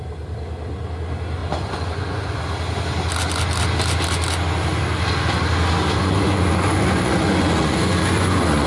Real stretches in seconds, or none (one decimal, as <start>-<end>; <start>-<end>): 0.0-1.4; 2.4-6.0